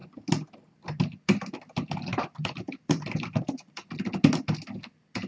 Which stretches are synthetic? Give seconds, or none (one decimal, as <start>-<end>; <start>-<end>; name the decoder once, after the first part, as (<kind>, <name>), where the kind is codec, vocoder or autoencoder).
2.1-3.9 (vocoder, BigVGAN v2)